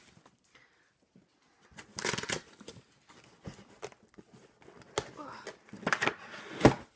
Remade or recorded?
recorded